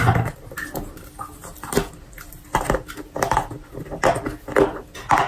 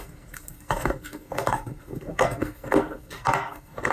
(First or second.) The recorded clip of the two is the first